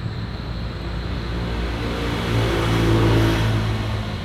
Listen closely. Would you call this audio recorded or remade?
recorded